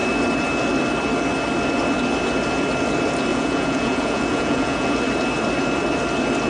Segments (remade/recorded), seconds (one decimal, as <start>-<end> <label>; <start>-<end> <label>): 0.0-3.3 recorded; 3.3-5.0 remade; 5.0-6.5 recorded